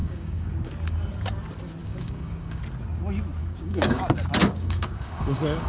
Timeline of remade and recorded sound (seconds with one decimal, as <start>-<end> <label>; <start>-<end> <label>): 0.0-0.5 remade; 0.5-1.8 recorded; 1.8-2.6 remade; 2.6-3.4 recorded; 3.4-4.0 remade; 4.0-4.4 recorded; 4.4-5.7 remade